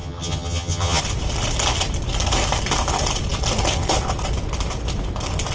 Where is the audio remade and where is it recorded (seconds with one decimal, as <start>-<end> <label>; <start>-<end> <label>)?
0.0-1.0 remade; 1.0-5.5 recorded